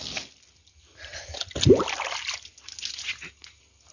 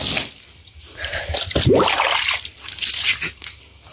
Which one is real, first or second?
first